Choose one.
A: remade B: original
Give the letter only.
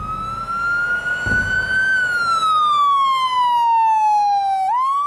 B